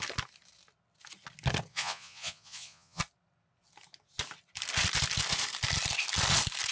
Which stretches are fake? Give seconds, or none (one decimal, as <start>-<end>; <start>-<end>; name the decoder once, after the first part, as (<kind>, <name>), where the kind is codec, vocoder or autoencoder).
1.7-3.0 (vocoder, Vocos)